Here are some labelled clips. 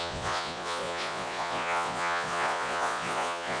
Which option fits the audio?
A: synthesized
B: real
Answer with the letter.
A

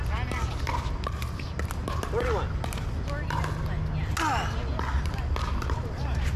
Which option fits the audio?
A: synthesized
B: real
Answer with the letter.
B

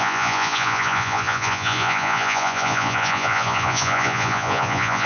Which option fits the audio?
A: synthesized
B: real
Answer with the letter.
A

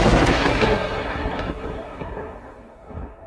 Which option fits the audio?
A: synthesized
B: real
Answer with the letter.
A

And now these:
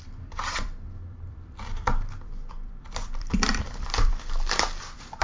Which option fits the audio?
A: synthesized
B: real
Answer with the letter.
A